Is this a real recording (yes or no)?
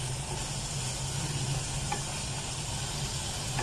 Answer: yes